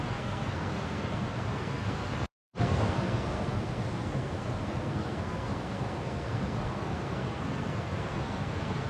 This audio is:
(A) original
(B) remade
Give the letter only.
B